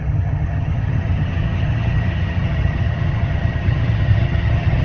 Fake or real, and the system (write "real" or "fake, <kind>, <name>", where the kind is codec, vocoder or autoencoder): fake, vocoder, HiFi-GAN